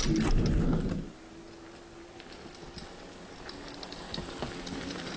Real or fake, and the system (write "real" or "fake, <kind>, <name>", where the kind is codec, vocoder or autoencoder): real